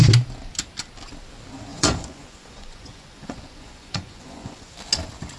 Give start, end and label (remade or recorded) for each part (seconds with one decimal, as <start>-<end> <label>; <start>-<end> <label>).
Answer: 0.0-1.7 recorded; 1.7-4.7 remade; 4.7-5.4 recorded